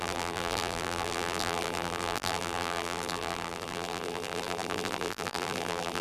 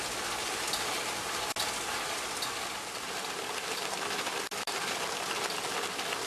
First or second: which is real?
second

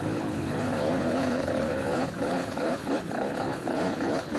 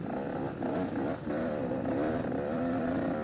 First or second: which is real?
second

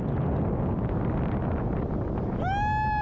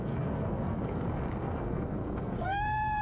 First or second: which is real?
first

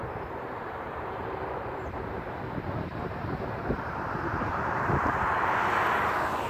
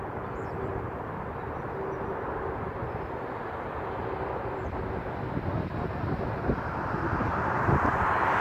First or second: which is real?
second